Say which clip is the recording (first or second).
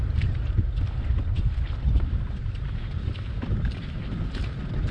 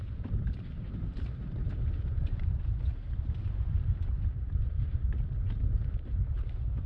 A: first